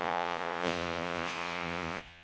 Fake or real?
fake